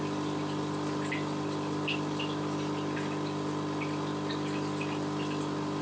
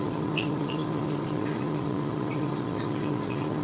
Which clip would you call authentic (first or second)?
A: first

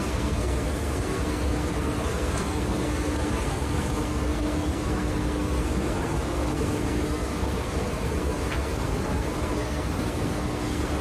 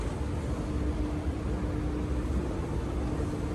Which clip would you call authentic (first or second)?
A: second